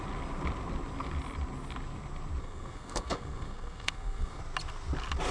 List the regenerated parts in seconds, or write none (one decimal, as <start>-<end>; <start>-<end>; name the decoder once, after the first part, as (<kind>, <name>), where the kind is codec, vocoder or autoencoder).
2.4-4.4 (codec, SNAC)